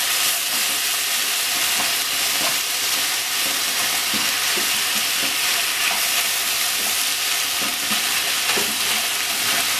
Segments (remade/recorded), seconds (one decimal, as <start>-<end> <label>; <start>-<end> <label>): 0.0-9.8 recorded